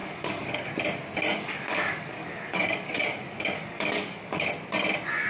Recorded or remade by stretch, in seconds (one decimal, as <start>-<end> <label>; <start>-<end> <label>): 0.0-0.7 remade; 0.7-1.3 recorded; 1.3-4.5 remade; 4.5-5.3 recorded

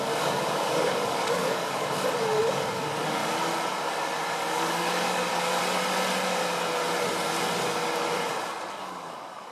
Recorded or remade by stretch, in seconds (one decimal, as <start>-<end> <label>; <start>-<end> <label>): 0.0-3.2 remade; 3.2-4.3 recorded; 4.3-5.5 remade; 5.5-8.7 recorded; 8.7-9.5 remade

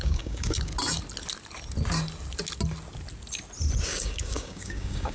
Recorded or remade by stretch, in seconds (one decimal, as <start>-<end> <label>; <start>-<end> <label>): 0.0-0.7 remade; 0.7-3.8 recorded; 3.8-5.1 remade

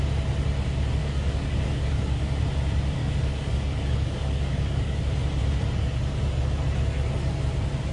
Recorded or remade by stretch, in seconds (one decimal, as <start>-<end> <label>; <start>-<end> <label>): 0.0-1.0 recorded; 1.0-2.4 remade; 2.4-3.0 recorded; 3.0-5.0 remade; 5.0-7.9 recorded

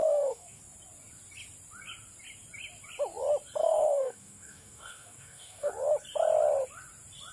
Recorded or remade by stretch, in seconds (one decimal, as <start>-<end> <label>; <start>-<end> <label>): 0.0-0.6 remade; 0.6-3.6 recorded; 3.6-5.7 remade; 5.7-7.3 recorded

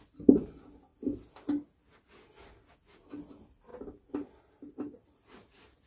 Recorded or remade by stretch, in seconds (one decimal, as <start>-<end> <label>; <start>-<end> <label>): 0.0-5.9 recorded

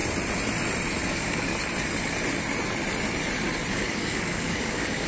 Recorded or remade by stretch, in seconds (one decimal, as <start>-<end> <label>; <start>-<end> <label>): 0.0-1.1 recorded; 1.1-1.5 remade; 1.5-3.7 recorded; 3.7-5.1 remade

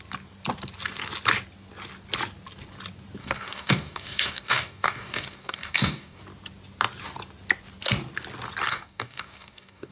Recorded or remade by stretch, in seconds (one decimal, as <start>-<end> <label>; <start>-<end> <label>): 0.0-3.2 recorded; 3.2-6.2 remade; 6.2-8.7 recorded; 8.7-9.9 remade